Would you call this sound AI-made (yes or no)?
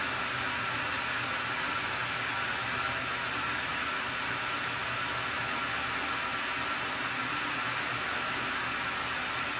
no